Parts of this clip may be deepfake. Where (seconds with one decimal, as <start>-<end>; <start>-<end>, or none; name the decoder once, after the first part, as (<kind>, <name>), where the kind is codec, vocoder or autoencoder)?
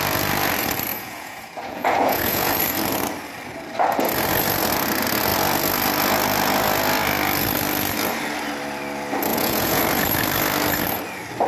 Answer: 0.9-2.5 (vocoder, Vocos); 9.3-9.8